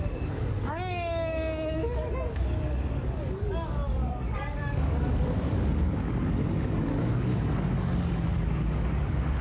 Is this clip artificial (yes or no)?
yes